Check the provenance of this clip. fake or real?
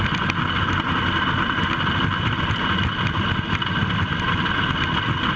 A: real